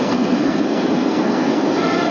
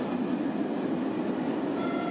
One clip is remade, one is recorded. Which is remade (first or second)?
first